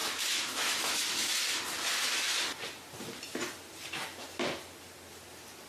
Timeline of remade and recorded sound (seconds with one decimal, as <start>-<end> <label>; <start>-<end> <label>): 0.0-1.0 remade; 1.0-5.7 recorded